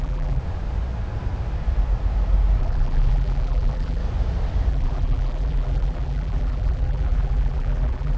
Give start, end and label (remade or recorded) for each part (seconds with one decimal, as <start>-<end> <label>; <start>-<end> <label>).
0.0-0.4 remade; 0.4-2.6 recorded; 2.6-4.0 remade; 4.0-4.7 recorded; 4.7-8.2 remade